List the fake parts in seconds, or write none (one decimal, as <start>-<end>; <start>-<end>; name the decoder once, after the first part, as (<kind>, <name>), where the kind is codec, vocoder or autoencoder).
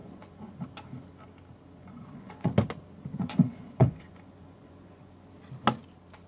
0.0-0.5 (vocoder, Vocos); 1.8-2.5; 3.1-5.3